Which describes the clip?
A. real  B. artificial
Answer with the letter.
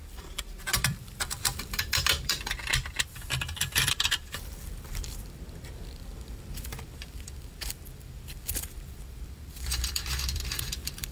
B